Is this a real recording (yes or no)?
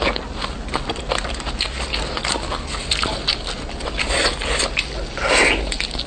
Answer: yes